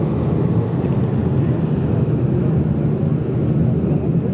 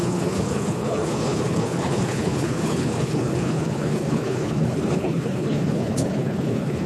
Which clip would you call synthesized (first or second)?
second